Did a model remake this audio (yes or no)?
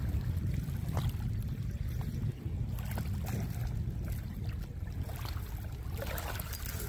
no